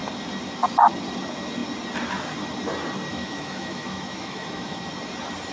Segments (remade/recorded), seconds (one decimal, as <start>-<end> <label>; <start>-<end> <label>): 0.0-3.1 recorded; 3.1-4.8 remade; 4.8-5.5 recorded